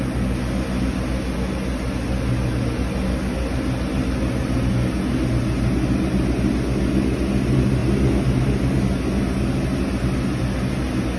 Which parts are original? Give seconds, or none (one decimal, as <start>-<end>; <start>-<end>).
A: 0.0-11.2